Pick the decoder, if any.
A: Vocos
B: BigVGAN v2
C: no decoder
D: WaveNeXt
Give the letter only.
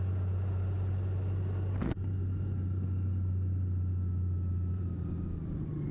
C